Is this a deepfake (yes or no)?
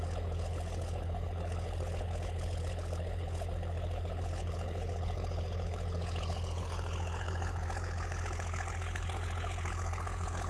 yes